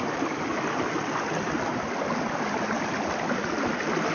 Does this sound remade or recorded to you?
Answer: recorded